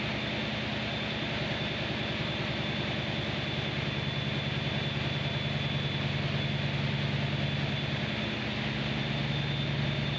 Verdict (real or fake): real